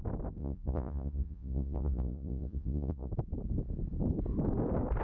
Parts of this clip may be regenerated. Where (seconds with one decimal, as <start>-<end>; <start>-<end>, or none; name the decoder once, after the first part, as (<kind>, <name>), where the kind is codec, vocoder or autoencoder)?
0.4-3.1 (vocoder, Vocos)